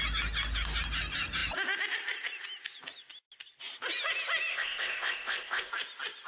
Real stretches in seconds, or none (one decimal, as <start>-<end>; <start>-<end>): 0.0-4.5; 5.7-6.3